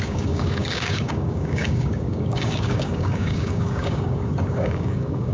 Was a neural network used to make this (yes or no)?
yes